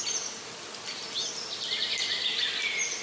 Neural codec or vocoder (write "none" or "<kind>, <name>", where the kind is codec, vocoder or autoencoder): none